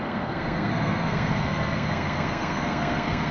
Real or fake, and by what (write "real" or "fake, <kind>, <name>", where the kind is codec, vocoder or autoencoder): fake, codec, SNAC